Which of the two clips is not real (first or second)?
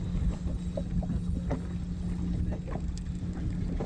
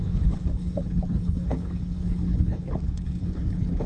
second